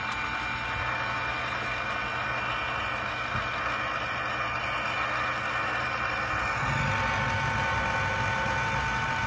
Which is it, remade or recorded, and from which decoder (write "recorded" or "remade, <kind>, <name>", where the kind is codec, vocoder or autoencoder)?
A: recorded